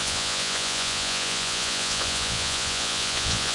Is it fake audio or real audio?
fake